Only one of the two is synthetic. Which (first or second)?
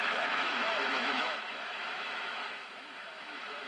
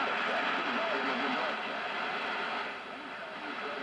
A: first